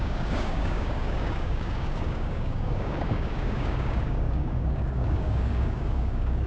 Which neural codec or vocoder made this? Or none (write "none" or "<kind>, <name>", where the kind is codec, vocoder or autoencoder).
codec, DAC